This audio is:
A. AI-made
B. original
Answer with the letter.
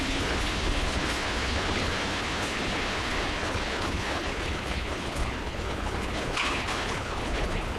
A